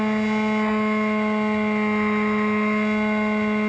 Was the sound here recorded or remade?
recorded